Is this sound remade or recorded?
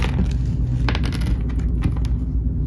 recorded